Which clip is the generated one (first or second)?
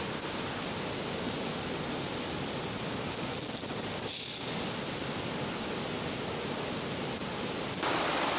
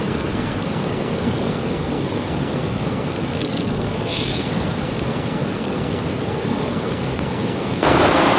second